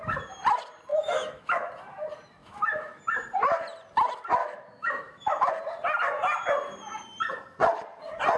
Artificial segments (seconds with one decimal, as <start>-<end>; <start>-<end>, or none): 0.9-1.7; 2.4-3.0; 4.4-5.5